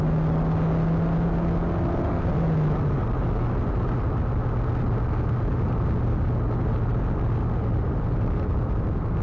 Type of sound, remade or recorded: recorded